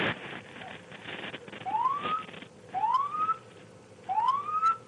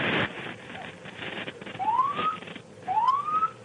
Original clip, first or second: first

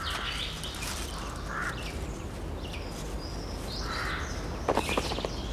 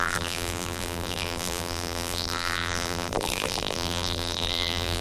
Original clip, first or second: first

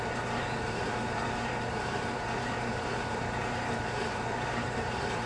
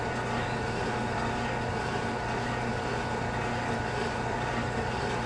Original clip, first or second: second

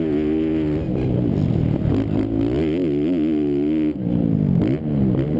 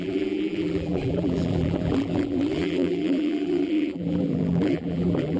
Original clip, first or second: first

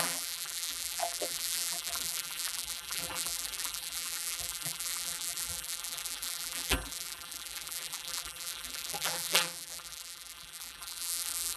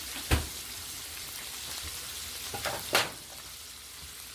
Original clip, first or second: second